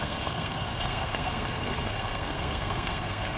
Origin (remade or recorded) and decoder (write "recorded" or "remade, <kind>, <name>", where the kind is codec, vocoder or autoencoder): remade, codec, SNAC